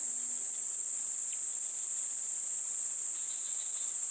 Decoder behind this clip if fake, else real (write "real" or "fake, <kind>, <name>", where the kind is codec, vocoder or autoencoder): fake, vocoder, BigVGAN v2